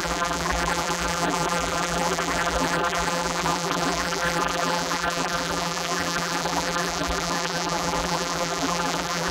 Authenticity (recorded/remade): remade